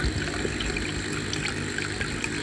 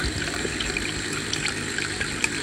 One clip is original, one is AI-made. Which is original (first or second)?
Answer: first